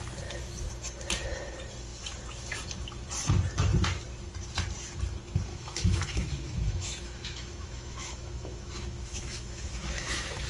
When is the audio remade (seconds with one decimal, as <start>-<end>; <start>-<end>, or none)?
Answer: 5.5-10.5